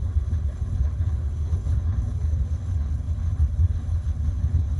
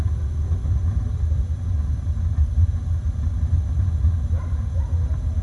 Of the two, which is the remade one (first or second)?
first